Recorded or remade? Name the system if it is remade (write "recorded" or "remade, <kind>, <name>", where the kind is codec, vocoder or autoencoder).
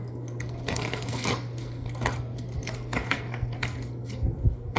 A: remade, codec, SNAC